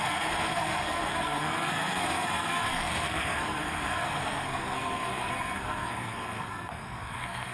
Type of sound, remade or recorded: remade